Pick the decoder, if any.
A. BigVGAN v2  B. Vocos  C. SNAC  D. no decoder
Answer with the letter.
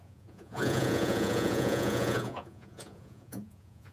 B